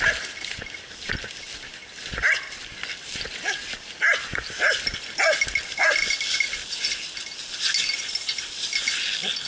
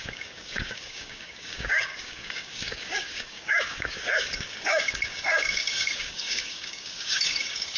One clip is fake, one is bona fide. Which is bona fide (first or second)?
first